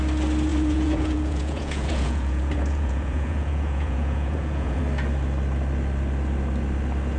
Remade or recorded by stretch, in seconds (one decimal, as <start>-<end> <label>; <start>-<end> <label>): 0.0-0.5 recorded; 0.5-4.8 remade; 4.8-7.2 recorded